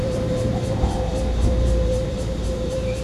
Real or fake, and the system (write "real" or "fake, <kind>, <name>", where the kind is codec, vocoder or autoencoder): fake, vocoder, BigVGAN v2